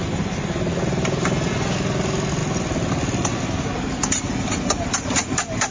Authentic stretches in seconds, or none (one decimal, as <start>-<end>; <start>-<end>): 0.0-5.7